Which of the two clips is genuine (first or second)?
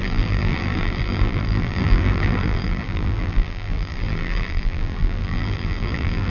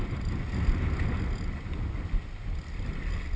second